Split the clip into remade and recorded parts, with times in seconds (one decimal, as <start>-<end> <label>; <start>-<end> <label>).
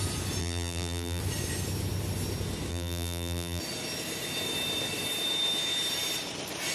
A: 0.0-0.4 recorded; 0.4-1.2 remade; 1.2-2.7 recorded; 2.7-3.6 remade; 3.6-6.7 recorded